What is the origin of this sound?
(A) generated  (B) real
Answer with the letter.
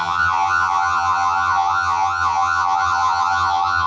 A